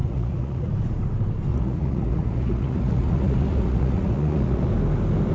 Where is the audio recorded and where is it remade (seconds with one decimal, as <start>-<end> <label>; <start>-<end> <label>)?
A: 0.0-0.7 remade; 0.7-1.5 recorded; 1.5-4.7 remade; 4.7-5.3 recorded